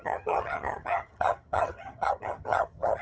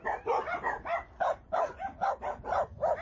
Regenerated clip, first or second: first